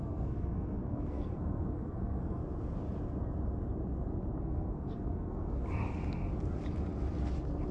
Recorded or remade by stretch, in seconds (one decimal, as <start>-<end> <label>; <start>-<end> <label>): 0.0-2.4 remade; 2.4-4.4 recorded; 4.4-5.6 remade; 5.6-7.7 recorded